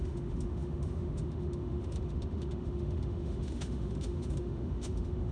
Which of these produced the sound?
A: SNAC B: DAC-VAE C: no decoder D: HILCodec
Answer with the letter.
B